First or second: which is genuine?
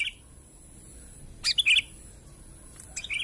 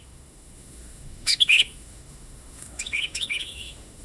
first